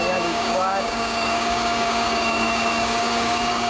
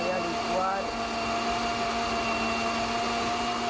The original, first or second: second